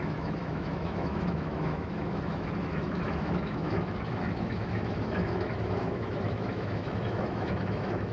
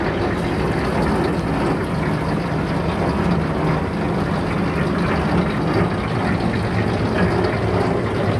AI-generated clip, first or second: first